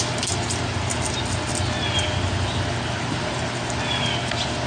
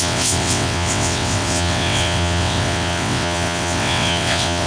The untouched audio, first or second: first